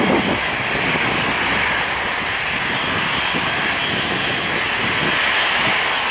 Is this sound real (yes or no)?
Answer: yes